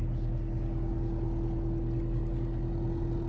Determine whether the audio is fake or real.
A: real